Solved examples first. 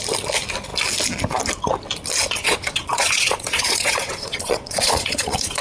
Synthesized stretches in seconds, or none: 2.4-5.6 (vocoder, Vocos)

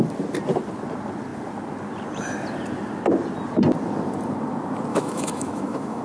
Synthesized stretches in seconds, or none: 4.9-6.0 (autoencoder, DAC-VAE)

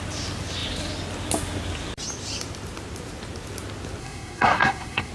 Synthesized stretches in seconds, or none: 4.0-5.1 (codec, SNAC)

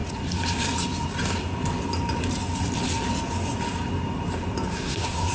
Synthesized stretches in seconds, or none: 4.7-5.3 (codec, SNAC)

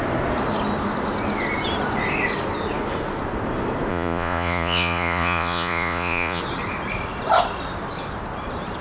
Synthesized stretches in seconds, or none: 3.9-6.4 (vocoder, Vocos)

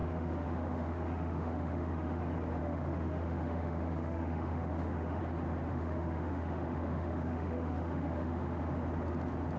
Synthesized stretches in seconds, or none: 0.0-2.2 (autoencoder, DAC-VAE); 2.6-5.2; 5.7-8.6

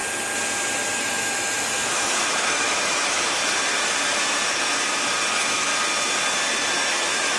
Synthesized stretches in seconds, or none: 1.0-3.4 (autoencoder, DAC-VAE); 5.3-5.7; 6.9-7.4